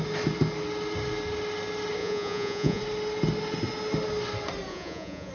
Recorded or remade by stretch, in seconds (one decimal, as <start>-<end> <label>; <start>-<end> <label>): 0.0-2.0 recorded; 2.0-2.8 remade; 2.8-4.7 recorded; 4.7-5.3 remade